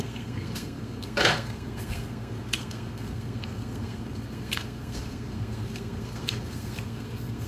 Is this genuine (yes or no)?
no